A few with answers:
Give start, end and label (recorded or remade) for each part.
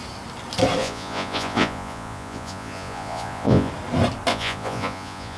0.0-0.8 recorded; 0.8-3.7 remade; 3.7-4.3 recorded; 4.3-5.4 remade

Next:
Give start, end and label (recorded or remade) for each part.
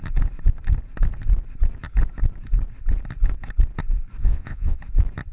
0.0-4.2 recorded; 4.2-4.8 remade; 4.8-5.3 recorded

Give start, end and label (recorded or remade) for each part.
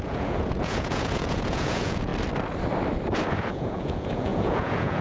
0.0-2.1 remade; 2.1-3.3 recorded; 3.3-5.0 remade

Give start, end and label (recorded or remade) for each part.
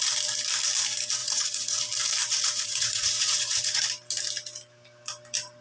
0.0-1.2 recorded; 1.2-1.8 remade; 1.8-2.2 recorded; 2.2-3.8 remade; 3.8-5.6 recorded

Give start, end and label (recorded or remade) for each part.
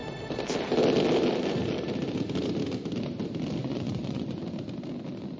0.0-3.6 recorded; 3.6-4.4 remade; 4.4-5.4 recorded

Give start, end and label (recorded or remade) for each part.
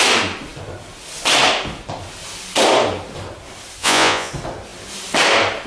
0.0-3.8 recorded; 3.8-4.3 remade; 4.3-5.7 recorded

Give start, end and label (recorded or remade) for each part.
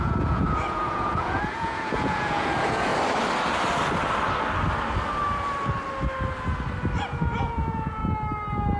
0.0-2.9 remade; 2.9-7.0 recorded; 7.0-8.0 remade; 8.0-8.8 recorded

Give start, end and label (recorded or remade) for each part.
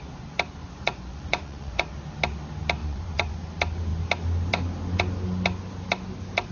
0.0-0.6 recorded; 0.6-1.9 remade; 1.9-2.8 recorded; 2.8-3.4 remade; 3.4-6.5 recorded